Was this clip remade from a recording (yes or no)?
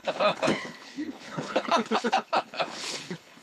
yes